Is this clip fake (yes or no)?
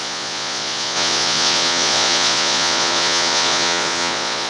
yes